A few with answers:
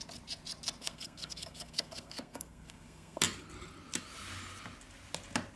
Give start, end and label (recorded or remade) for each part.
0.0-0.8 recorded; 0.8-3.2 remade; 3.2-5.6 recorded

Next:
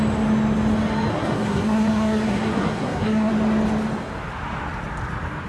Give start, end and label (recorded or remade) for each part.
0.0-1.1 recorded; 1.1-3.3 remade; 3.3-5.5 recorded

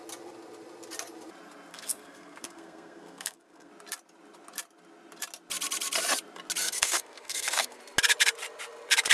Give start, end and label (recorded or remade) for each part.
0.0-1.7 recorded; 1.7-3.7 remade; 3.7-6.6 recorded; 6.6-7.8 remade; 7.8-9.1 recorded

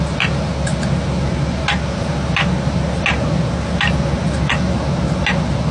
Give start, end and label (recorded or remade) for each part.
0.0-5.7 recorded